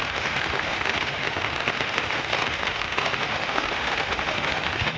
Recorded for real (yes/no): no